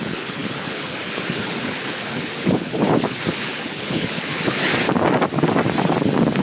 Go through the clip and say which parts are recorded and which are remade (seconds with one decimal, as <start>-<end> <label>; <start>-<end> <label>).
0.0-4.7 remade; 4.7-6.4 recorded